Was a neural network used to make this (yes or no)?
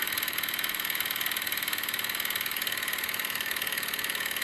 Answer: yes